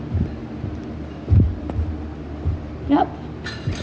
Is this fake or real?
real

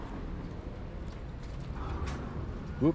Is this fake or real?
real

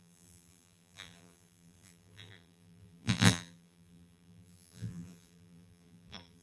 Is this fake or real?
fake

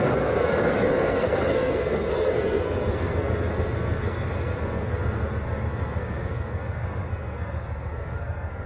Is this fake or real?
fake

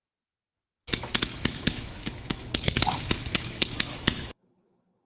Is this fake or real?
fake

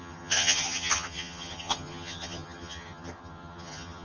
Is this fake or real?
fake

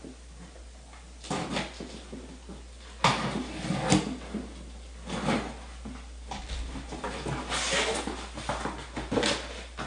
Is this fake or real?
real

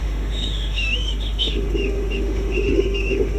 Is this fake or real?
fake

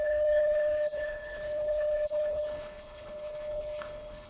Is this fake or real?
fake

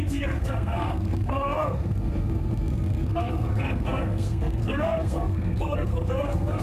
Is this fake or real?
fake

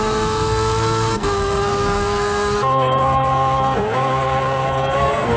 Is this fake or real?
fake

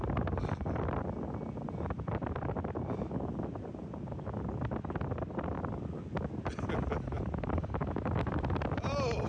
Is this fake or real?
real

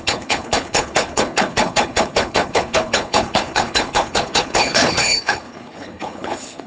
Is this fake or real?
fake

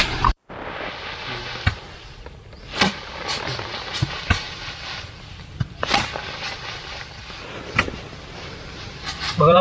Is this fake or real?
fake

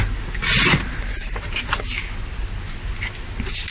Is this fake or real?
real